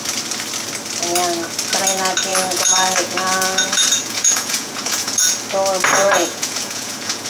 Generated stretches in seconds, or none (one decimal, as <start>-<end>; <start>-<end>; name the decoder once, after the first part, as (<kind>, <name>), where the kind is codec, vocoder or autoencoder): 2.3-5.4 (vocoder, Vocos); 6.0-7.3